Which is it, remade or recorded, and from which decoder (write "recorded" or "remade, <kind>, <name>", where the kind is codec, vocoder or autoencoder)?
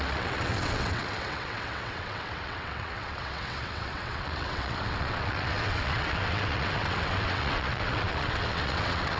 remade, vocoder, WaveNeXt